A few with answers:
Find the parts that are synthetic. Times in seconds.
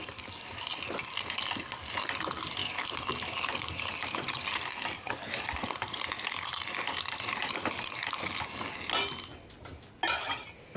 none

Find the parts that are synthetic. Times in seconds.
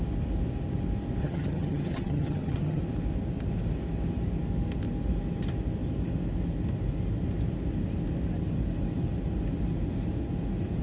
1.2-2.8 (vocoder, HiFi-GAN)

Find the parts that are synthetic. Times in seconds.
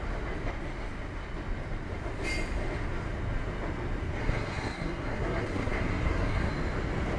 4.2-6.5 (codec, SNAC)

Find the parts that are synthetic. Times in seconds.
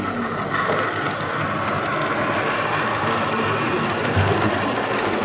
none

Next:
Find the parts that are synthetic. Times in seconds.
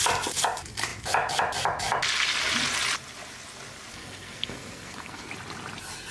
3.9-5.3 (codec, SNAC)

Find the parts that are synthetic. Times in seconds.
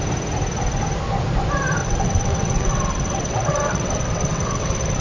1.8-5.0 (vocoder, WaveNeXt)